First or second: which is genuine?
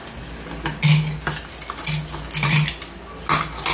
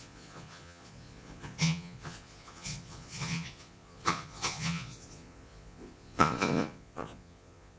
first